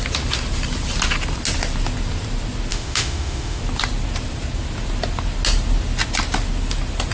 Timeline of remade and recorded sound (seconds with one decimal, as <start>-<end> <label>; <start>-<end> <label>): 0.0-2.7 recorded; 2.7-3.6 remade; 3.6-7.1 recorded